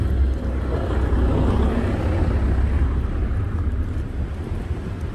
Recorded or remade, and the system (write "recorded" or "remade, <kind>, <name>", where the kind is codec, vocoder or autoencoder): recorded